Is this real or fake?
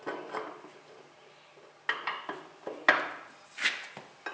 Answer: real